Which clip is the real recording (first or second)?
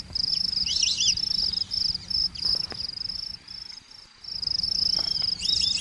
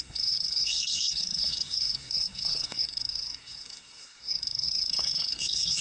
first